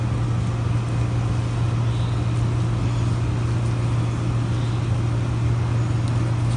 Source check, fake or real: real